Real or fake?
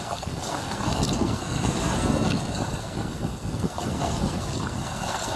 fake